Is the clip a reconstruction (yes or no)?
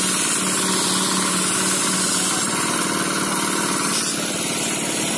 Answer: no